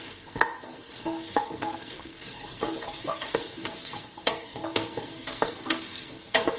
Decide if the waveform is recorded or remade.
remade